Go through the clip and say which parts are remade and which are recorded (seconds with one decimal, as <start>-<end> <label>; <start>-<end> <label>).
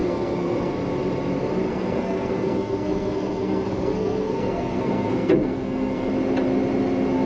0.0-0.7 remade; 0.7-1.7 recorded; 1.7-6.1 remade; 6.1-7.3 recorded